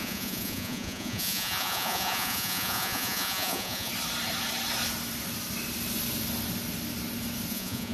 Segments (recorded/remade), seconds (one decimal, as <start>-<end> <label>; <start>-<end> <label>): 0.0-3.9 remade; 3.9-7.5 recorded; 7.5-7.9 remade